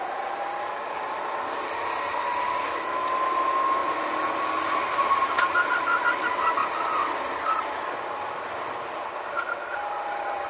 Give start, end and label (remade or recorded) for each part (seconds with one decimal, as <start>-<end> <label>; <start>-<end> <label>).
0.0-10.5 recorded